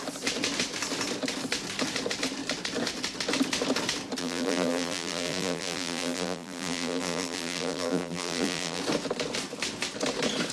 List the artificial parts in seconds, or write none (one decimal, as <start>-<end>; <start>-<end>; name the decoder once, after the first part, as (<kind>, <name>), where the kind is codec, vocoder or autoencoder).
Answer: 4.2-8.8 (vocoder, BigVGAN v2)